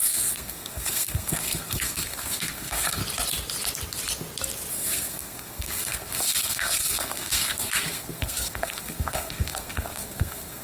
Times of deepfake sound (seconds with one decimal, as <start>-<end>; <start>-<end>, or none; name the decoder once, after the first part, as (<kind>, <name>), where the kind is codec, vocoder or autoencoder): 0.0-3.0 (codec, SNAC); 4.7-10.6